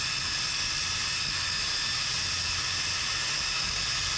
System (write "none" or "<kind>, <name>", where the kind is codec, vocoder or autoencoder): none